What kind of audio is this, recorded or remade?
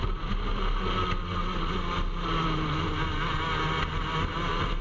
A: recorded